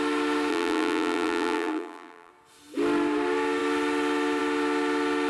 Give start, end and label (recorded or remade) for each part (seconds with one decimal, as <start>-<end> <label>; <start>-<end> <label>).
0.0-0.5 recorded; 0.5-2.3 remade; 2.3-5.3 recorded